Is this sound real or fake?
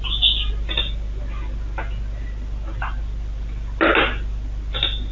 real